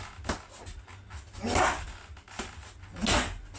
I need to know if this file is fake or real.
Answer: real